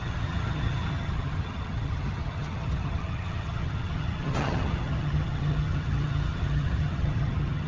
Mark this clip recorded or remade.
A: remade